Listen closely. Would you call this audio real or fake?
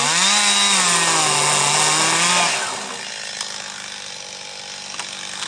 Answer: real